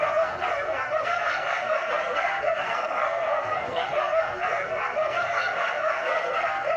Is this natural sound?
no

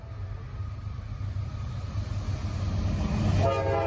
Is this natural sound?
yes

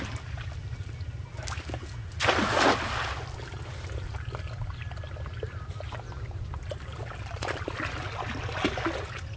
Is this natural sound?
yes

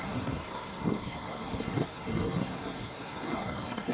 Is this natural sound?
no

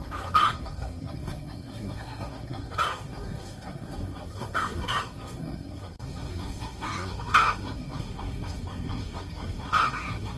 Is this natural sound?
no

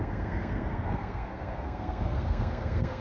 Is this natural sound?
no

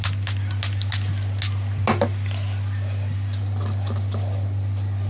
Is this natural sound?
yes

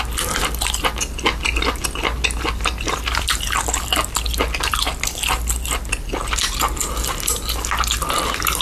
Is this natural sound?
yes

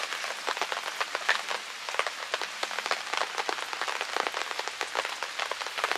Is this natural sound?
yes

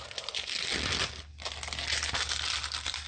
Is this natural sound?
yes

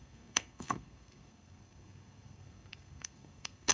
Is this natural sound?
no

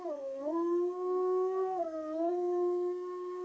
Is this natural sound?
no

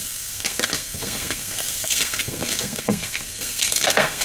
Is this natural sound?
no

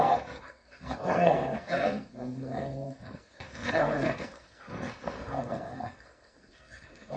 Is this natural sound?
no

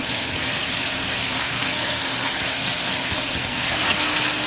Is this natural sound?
no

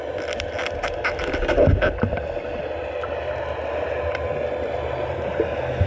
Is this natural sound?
yes